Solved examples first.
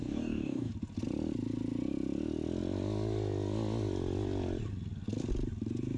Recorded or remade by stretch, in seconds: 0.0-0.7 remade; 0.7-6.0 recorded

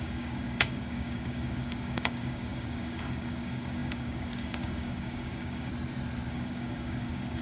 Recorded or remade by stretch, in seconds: 0.0-5.7 remade; 5.7-6.3 recorded; 6.3-7.4 remade

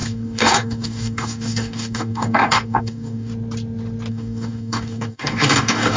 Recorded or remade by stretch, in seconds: 0.0-3.3 remade; 3.3-4.1 recorded; 4.1-6.0 remade

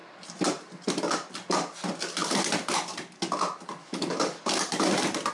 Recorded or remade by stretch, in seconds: 0.0-3.8 recorded; 3.8-4.4 remade; 4.4-5.3 recorded

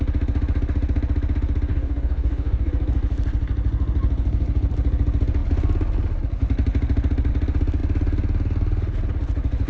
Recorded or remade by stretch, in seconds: 0.0-1.7 recorded; 1.7-2.7 remade; 2.7-9.7 recorded